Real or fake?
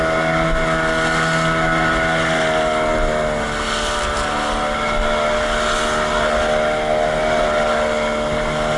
real